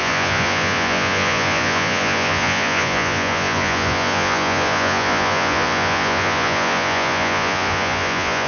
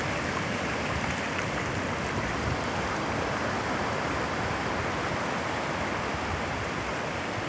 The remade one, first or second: first